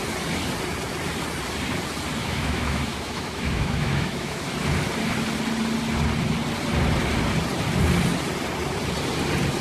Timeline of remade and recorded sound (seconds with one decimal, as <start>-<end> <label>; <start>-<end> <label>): 0.0-2.2 recorded; 2.2-4.4 remade; 4.4-9.6 recorded